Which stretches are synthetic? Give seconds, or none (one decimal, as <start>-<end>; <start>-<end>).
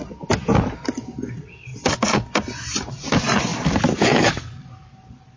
0.0-1.7; 2.9-5.4